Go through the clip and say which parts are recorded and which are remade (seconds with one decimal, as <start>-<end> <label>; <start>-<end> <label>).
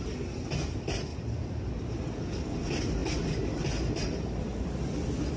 0.0-1.1 recorded; 1.1-1.7 remade; 1.7-5.4 recorded